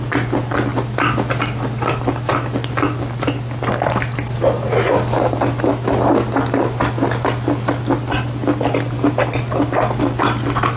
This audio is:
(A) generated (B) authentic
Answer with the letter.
B